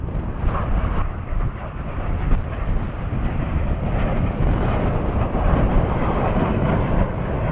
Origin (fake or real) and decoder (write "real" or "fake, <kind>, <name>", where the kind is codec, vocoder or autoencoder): real